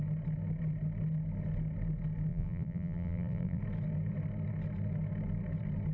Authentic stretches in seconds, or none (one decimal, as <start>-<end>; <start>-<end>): 0.0-2.3; 3.6-5.9